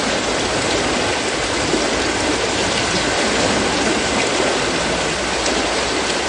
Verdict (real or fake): real